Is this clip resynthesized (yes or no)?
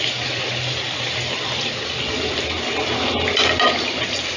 no